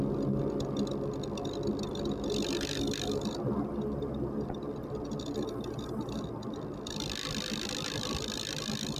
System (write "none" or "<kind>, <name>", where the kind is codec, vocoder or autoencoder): none